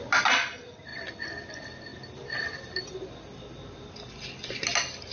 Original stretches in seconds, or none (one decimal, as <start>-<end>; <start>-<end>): 0.0-5.1